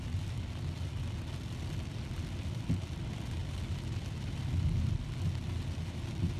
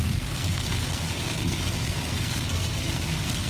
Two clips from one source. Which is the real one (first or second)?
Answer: first